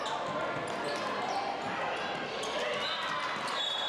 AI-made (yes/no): no